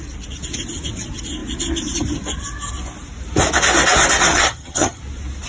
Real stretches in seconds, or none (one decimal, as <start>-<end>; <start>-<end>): 0.0-4.3; 5.0-5.5

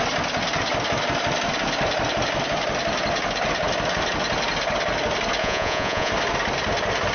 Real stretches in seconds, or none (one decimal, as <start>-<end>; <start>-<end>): 0.0-5.4; 6.1-7.1